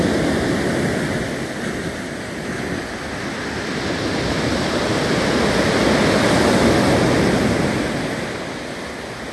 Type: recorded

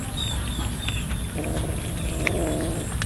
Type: recorded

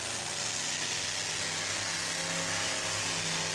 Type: recorded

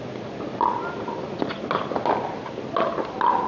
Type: recorded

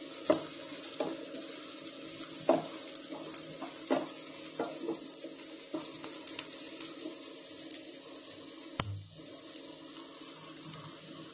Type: recorded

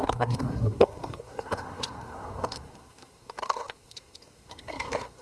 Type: remade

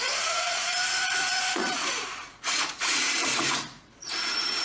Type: remade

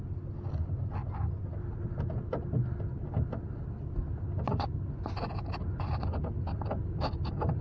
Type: recorded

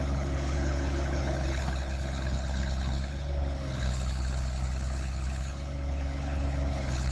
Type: remade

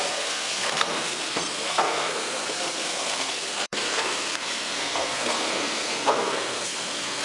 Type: remade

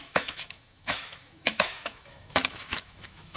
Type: remade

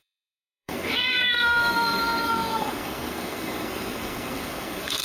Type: remade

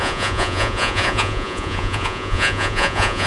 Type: remade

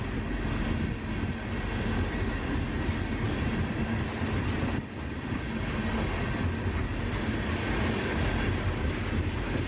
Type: recorded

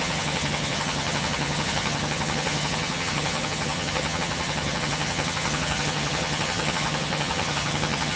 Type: remade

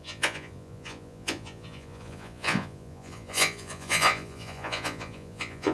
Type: remade